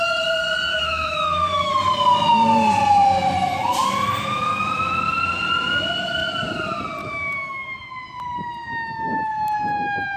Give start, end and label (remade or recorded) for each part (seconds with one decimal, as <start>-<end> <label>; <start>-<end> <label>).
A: 0.0-0.7 recorded; 0.7-1.7 remade; 1.7-7.0 recorded; 7.0-7.9 remade; 7.9-10.2 recorded